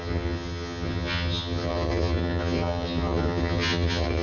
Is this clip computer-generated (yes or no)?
yes